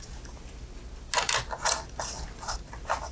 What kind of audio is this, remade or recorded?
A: recorded